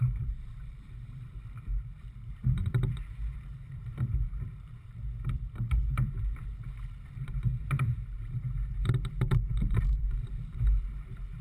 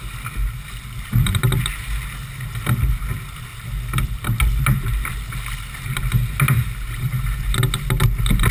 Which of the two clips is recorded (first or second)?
second